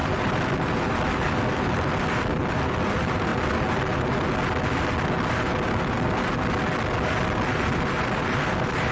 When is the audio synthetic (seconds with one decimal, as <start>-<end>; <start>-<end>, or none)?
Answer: 0.0-3.3; 8.0-8.9

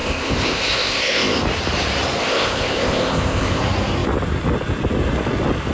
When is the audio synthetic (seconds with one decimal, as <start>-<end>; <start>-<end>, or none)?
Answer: 0.0-1.4; 2.2-3.6

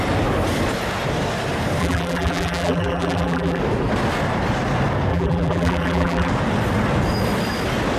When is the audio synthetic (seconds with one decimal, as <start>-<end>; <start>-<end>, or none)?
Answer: 1.8-3.6; 5.1-6.3

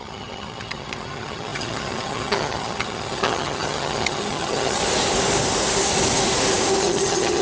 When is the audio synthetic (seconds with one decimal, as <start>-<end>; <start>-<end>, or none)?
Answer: 0.0-4.8; 6.8-7.4